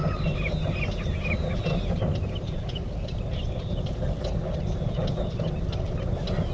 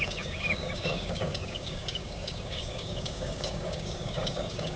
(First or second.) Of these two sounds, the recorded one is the first